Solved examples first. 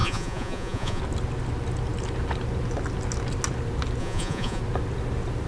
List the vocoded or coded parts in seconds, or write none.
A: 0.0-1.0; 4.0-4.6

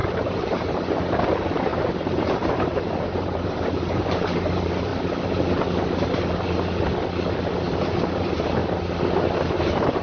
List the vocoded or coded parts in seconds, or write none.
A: 0.0-4.9; 8.2-8.6; 9.4-10.0

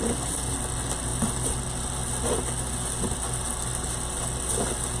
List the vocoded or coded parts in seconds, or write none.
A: none